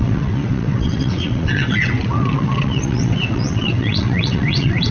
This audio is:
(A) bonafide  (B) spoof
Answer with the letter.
B